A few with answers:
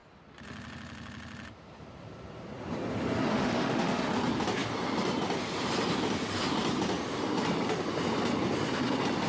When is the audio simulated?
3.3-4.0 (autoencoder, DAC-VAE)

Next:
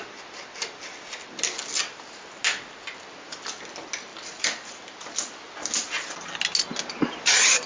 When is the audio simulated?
none

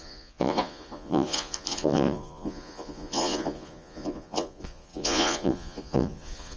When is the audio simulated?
0.0-6.6 (vocoder, Vocos)

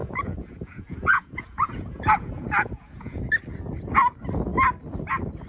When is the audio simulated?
0.0-3.3 (vocoder, Vocos)